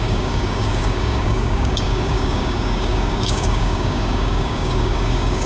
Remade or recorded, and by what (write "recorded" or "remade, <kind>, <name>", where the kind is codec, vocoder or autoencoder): remade, codec, DAC